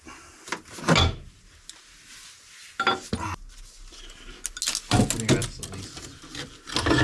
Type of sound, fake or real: real